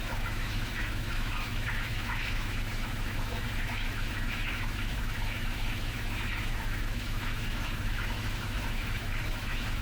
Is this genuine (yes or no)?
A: no